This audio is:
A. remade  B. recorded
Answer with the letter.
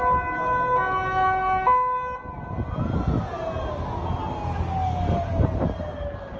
B